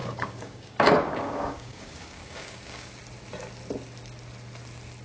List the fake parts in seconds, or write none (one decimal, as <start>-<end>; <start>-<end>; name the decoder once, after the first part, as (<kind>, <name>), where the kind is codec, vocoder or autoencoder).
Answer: 0.0-3.0 (codec, DAC)